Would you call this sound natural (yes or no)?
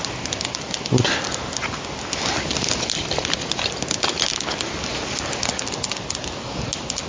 yes